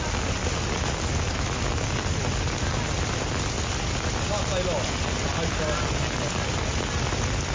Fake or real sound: real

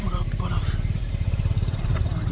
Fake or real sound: fake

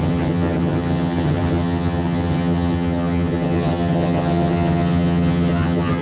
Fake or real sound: fake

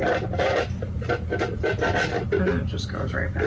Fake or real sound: real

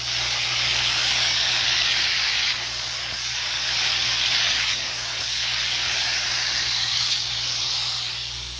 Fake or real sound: fake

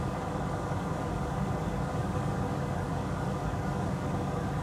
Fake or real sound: fake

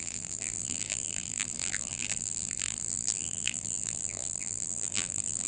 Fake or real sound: fake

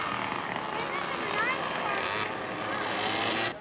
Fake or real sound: real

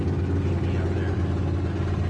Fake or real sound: real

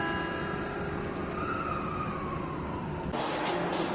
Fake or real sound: real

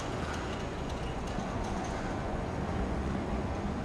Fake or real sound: fake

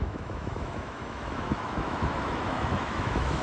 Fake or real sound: fake